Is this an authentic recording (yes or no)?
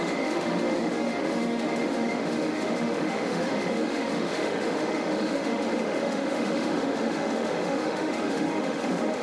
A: no